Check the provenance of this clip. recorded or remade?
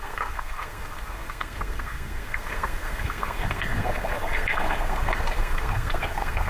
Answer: remade